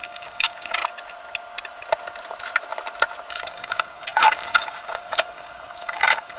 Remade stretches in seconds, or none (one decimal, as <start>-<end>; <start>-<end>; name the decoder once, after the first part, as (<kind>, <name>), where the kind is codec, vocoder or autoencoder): 0.0-0.8 (codec, DAC); 3.3-6.4